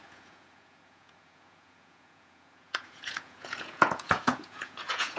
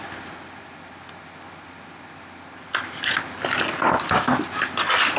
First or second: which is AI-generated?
first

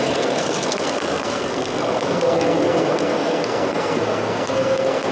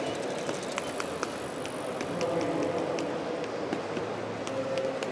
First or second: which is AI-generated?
first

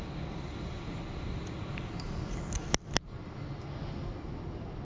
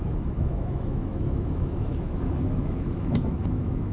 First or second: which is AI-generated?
second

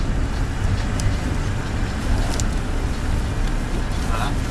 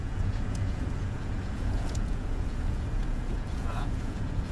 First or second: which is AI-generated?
second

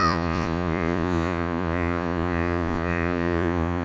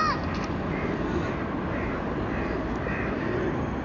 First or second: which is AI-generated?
first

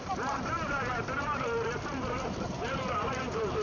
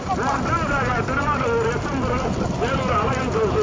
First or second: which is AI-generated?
first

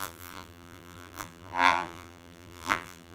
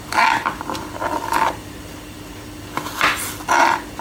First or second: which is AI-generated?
first